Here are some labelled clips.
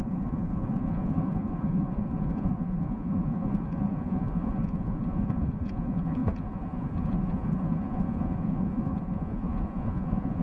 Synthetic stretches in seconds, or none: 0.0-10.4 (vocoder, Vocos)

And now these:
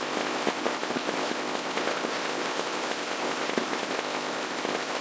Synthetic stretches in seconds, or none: 0.0-5.0 (codec, ZipCodec)

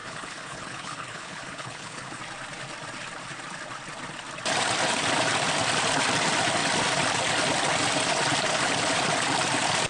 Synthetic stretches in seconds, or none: 0.0-2.2 (codec, HILCodec)

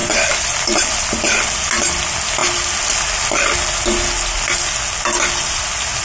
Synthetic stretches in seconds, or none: none

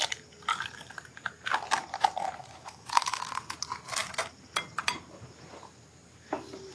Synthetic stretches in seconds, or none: 2.4-3.3 (autoencoder, DAC-VAE)

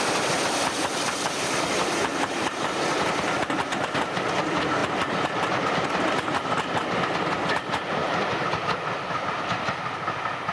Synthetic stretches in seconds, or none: 2.1-2.8 (vocoder, BigVGAN v2); 8.0-8.5